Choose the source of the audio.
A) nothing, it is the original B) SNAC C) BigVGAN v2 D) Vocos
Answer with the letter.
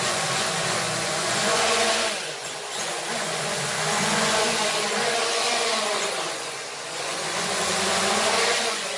D